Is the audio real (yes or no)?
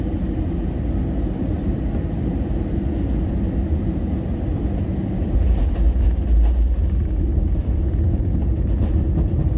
yes